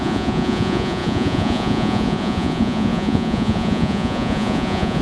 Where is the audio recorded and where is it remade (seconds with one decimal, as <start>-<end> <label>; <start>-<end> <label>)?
0.0-5.0 remade

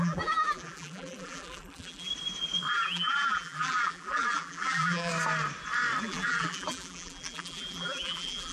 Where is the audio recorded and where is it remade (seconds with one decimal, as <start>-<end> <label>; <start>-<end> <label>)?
0.0-2.1 remade; 2.1-2.7 recorded; 2.7-5.1 remade; 5.1-6.0 recorded; 6.0-8.5 remade